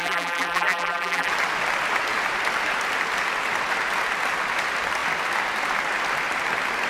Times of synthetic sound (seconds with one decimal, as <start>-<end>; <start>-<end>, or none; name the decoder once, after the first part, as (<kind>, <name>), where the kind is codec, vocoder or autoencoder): 0.0-1.3 (vocoder, BigVGAN v2)